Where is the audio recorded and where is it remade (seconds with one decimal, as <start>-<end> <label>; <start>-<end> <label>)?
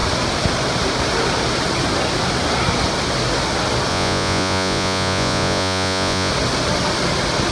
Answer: 0.0-3.9 recorded; 3.9-6.3 remade; 6.3-7.5 recorded